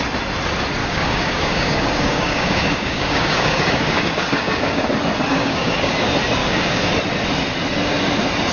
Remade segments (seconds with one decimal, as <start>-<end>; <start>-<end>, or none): 0.8-4.8; 5.3-5.9; 6.4-6.9

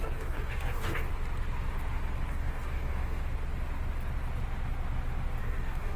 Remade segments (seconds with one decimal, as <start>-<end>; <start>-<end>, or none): 0.0-1.1; 2.3-3.2; 5.4-6.0

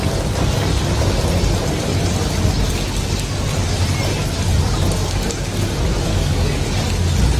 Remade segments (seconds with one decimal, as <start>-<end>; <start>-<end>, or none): 6.1-6.7

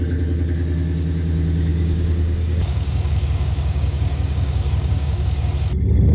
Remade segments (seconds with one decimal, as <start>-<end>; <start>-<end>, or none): 1.7-5.4

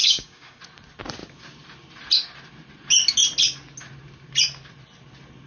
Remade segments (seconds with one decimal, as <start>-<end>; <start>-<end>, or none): 0.0-0.6